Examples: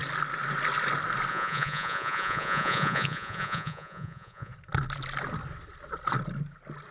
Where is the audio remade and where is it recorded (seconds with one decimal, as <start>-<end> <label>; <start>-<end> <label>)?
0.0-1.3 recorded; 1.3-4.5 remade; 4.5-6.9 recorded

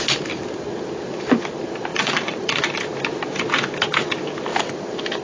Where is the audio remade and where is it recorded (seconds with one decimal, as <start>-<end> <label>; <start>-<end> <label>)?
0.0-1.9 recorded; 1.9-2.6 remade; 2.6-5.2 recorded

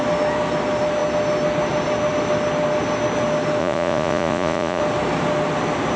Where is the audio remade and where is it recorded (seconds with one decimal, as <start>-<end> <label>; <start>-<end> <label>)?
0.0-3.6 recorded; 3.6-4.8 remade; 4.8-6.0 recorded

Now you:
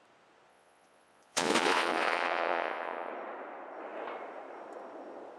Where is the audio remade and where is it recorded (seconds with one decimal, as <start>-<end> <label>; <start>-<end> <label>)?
0.0-0.5 recorded; 0.5-3.1 remade; 3.1-5.4 recorded

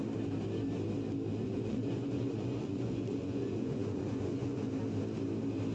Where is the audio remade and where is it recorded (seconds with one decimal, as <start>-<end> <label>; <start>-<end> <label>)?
0.0-1.3 recorded; 1.3-4.7 remade; 4.7-5.7 recorded